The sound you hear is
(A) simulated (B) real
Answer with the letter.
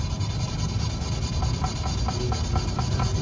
B